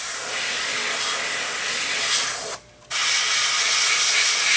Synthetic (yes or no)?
no